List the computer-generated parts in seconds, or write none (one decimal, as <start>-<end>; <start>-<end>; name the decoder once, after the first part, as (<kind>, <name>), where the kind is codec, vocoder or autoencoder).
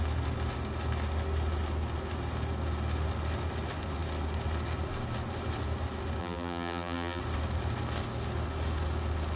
6.2-7.2 (vocoder, BigVGAN v2)